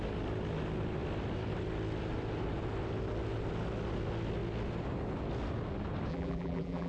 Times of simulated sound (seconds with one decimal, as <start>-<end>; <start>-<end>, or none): 6.1-6.9